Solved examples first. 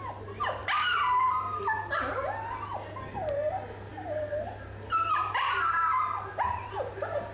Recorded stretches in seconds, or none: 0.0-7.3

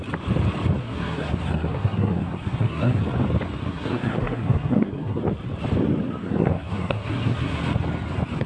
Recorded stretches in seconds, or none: 0.0-0.8; 3.0-3.6; 5.2-6.2; 7.6-8.5

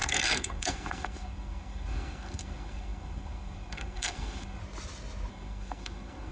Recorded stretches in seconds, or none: 4.6-5.3

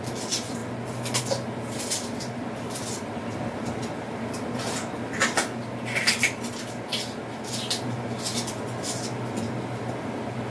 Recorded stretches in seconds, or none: 0.0-10.5

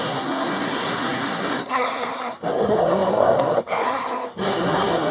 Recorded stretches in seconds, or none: none

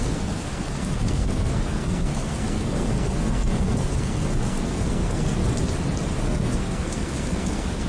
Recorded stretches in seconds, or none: 5.4-6.2

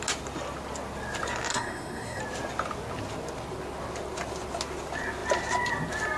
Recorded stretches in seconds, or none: 0.0-1.5; 2.2-6.2